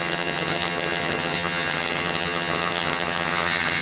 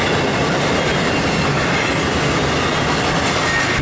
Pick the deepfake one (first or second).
first